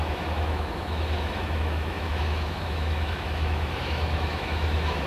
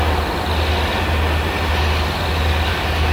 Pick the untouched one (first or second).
second